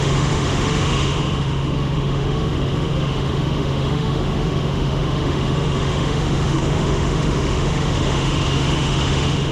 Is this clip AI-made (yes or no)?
yes